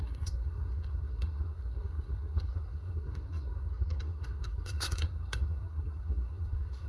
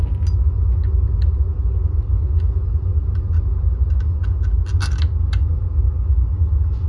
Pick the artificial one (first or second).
first